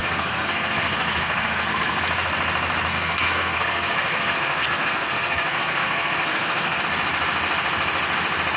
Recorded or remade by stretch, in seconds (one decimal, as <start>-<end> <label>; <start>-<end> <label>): 0.0-2.0 remade; 2.0-2.9 recorded; 2.9-6.8 remade; 6.8-8.6 recorded